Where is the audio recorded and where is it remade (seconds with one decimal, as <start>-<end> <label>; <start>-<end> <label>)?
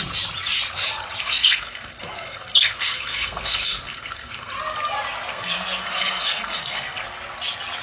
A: 0.0-1.2 recorded; 1.2-4.5 remade; 4.5-5.3 recorded; 5.3-7.0 remade; 7.0-7.8 recorded